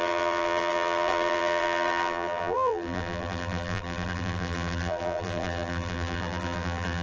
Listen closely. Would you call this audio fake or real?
fake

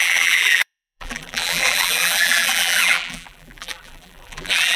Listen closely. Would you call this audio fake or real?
fake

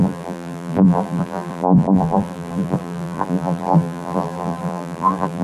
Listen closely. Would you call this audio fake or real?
fake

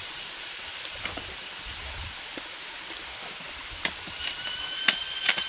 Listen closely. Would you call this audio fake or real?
fake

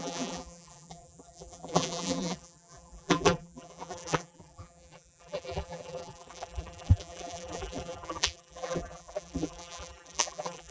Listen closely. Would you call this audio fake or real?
fake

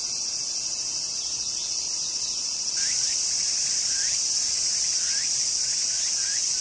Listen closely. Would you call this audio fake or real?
real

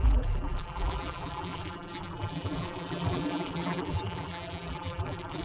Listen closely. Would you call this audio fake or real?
fake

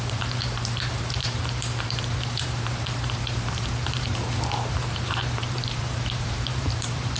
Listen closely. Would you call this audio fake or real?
fake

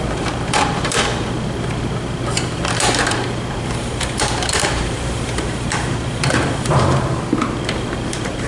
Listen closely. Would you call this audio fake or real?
fake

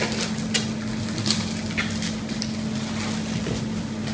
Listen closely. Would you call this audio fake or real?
real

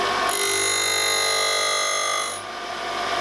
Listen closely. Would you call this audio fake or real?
real